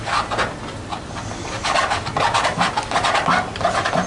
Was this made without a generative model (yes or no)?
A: yes